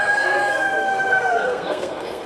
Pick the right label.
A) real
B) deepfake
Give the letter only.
B